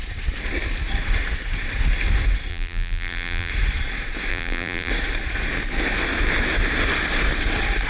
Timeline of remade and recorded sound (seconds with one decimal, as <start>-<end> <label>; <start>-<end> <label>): 0.0-2.5 recorded; 2.5-3.5 remade; 3.5-4.3 recorded; 4.3-4.9 remade; 4.9-7.9 recorded